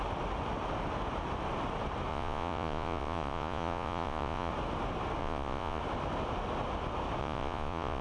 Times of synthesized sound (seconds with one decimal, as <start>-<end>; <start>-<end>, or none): 2.1-4.5; 5.2-5.8; 7.2-8.0